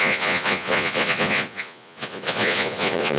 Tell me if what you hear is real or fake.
fake